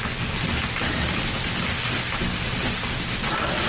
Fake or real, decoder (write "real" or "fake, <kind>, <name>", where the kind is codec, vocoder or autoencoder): real